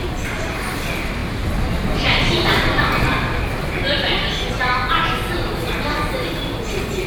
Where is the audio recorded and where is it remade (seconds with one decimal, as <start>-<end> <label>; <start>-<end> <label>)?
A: 0.0-1.2 recorded; 1.2-4.5 remade; 4.5-7.1 recorded